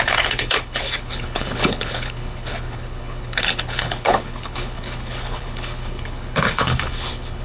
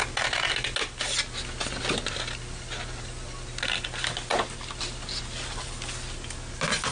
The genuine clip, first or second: second